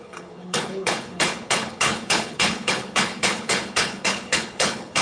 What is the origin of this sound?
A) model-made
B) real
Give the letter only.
A